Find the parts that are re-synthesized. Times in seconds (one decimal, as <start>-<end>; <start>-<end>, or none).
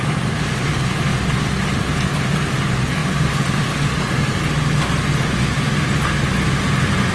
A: 3.0-4.3